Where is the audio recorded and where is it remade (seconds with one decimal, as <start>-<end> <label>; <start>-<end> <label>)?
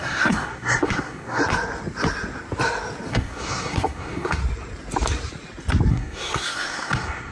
0.0-1.4 remade; 1.4-3.1 recorded; 3.1-4.4 remade; 4.4-5.9 recorded; 5.9-7.3 remade